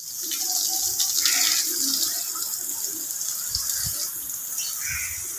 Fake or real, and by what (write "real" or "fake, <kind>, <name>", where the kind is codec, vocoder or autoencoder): real